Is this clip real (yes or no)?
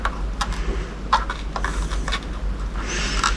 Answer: yes